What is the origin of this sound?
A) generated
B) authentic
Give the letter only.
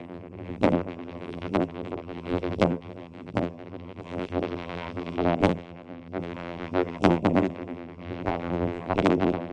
A